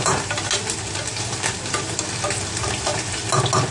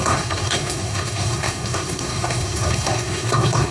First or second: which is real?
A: first